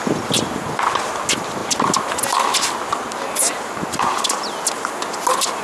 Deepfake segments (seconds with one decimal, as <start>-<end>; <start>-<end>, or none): none